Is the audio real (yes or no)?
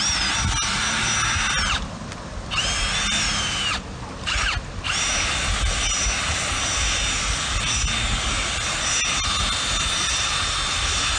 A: yes